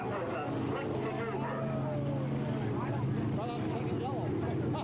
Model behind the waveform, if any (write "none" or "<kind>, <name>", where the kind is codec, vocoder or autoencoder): none